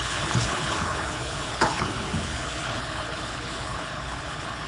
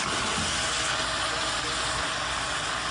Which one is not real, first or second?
first